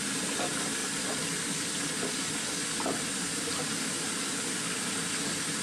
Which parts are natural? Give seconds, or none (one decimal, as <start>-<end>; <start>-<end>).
0.0-5.6